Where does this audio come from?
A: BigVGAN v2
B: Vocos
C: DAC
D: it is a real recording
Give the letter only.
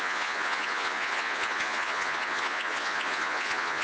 B